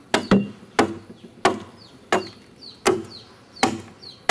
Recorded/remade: recorded